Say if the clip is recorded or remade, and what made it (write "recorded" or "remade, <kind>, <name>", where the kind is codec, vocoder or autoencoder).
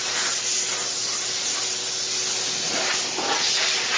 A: recorded